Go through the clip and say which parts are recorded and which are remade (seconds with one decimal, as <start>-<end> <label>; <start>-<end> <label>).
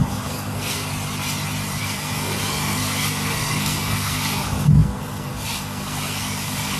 0.0-0.9 remade; 0.9-1.8 recorded; 1.8-6.8 remade